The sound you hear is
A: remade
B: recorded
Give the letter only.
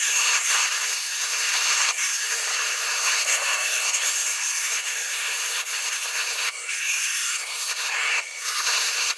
A